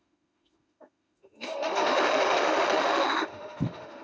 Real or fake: fake